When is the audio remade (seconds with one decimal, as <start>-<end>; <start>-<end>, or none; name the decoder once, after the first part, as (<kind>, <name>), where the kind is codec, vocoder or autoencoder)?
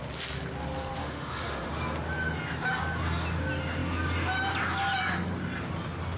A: 1.0-1.7 (autoencoder, DAC-VAE)